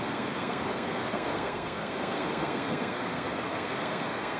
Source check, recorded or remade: remade